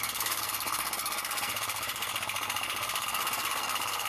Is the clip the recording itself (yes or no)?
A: no